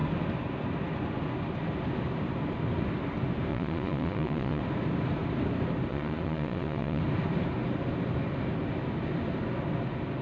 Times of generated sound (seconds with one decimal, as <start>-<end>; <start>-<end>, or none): 3.5-4.6; 5.9-7.0